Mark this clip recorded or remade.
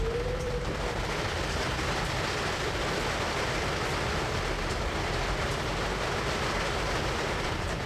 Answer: recorded